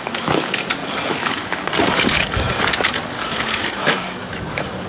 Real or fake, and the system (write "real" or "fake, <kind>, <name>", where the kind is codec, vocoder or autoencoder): fake, codec, DAC